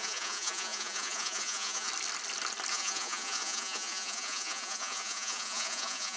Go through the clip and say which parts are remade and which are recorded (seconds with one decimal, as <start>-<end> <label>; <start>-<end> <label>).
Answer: 0.0-1.9 remade; 1.9-2.7 recorded; 2.7-6.2 remade